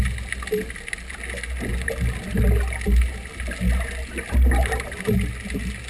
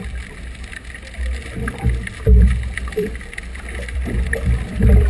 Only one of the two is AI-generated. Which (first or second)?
second